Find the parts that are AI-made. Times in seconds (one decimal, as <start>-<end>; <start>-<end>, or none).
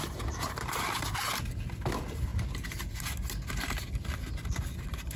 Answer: none